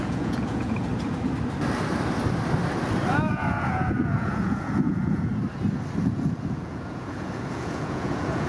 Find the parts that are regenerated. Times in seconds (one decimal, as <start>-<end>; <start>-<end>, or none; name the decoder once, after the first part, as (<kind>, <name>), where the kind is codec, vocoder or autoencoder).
0.0-0.9 (vocoder, Vocos); 3.3-5.3; 6.0-8.5